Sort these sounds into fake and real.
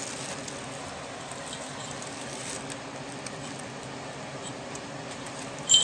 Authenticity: fake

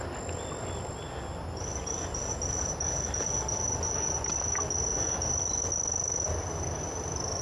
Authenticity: real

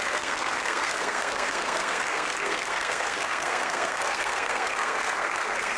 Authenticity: fake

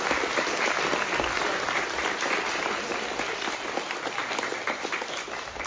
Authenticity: real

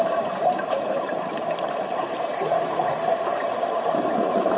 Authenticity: fake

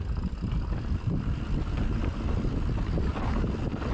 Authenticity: real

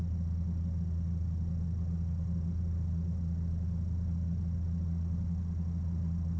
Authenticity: real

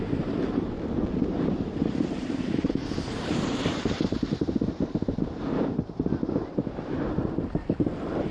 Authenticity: fake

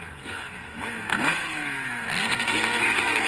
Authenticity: fake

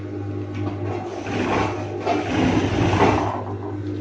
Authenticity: real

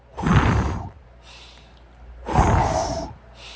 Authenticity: real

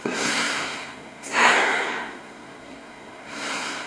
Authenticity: fake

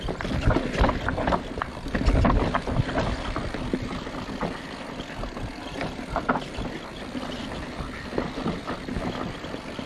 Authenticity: real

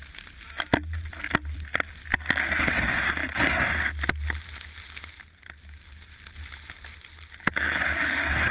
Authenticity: real